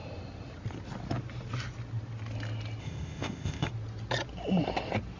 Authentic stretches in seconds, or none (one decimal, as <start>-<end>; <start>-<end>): 0.0-2.8; 3.7-5.2

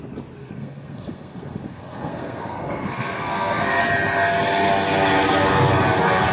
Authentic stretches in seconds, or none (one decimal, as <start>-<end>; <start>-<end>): 0.0-0.4; 3.8-6.3

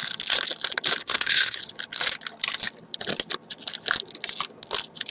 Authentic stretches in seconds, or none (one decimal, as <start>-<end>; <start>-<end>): 0.0-1.0; 1.6-5.1

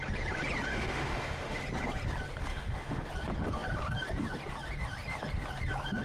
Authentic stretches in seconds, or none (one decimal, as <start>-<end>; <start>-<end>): 0.0-0.7; 1.6-2.5; 3.1-6.0

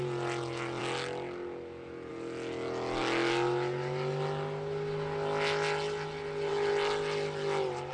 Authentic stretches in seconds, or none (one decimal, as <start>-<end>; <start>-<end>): 0.0-7.9

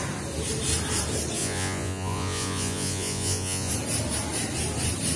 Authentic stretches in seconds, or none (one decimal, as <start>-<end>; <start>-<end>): 0.0-1.4; 3.7-5.2